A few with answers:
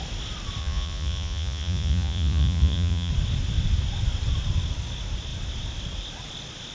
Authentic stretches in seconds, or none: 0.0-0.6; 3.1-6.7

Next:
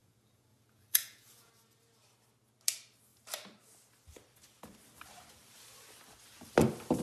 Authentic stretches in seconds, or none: 1.5-7.0